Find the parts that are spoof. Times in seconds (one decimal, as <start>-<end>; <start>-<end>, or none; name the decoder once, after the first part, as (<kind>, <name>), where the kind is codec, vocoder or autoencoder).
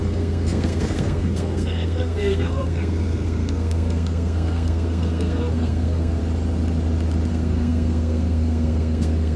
0.0-6.2 (codec, SNAC); 7.3-9.4